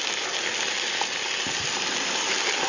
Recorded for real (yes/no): yes